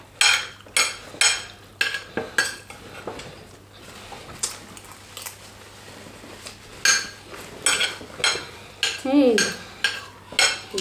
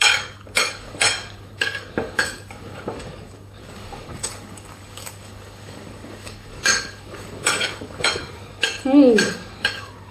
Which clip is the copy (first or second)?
second